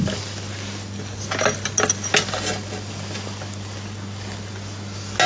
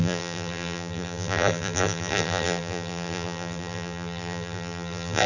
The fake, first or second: second